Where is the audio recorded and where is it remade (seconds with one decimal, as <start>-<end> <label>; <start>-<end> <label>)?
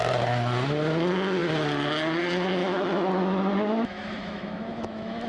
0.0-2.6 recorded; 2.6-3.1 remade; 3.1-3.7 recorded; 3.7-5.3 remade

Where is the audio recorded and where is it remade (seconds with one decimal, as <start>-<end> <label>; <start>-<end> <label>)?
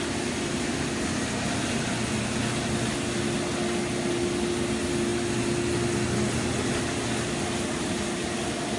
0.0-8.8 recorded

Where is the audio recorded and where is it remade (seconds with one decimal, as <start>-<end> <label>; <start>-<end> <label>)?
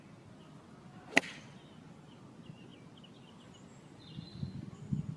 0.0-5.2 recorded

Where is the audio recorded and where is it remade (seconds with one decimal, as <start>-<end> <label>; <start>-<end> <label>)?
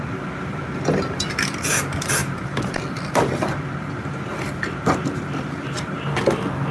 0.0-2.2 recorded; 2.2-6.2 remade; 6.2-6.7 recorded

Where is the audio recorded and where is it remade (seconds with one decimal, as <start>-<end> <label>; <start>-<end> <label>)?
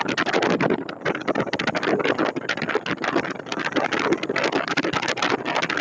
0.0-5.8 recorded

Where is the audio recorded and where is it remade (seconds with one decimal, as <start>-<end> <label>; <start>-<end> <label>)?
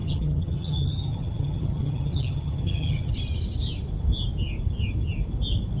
0.0-3.1 remade; 3.1-5.8 recorded